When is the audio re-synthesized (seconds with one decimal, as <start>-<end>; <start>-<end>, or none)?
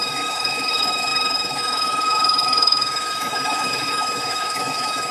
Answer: 0.0-5.1